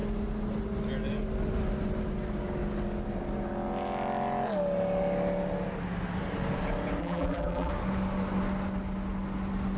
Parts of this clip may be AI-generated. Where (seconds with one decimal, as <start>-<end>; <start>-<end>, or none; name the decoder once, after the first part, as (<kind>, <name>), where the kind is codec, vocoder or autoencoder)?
7.0-7.7 (vocoder, BigVGAN v2)